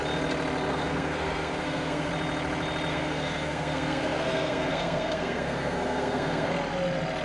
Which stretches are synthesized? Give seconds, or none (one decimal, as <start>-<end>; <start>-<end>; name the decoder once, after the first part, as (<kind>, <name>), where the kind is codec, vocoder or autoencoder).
0.7-2.1 (codec, SNAC); 2.9-6.5